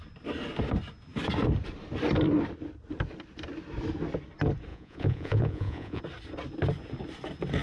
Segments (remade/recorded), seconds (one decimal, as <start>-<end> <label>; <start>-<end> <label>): 0.0-4.7 recorded; 4.7-6.0 remade; 6.0-7.6 recorded